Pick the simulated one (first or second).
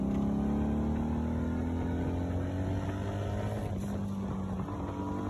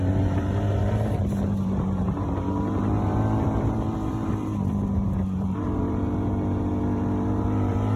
second